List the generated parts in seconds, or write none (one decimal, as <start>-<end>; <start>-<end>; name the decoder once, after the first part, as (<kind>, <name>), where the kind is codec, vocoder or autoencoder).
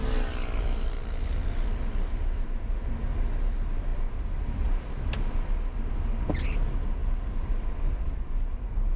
none